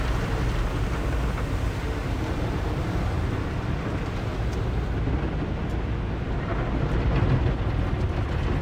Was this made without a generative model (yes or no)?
yes